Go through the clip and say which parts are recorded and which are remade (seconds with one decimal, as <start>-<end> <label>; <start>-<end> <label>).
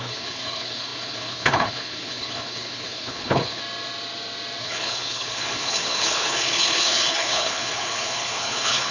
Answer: 0.0-3.6 remade; 3.6-4.6 recorded; 4.6-8.9 remade